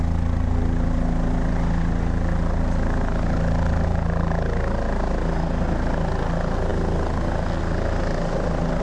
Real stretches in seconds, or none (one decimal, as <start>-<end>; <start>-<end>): 0.0-8.8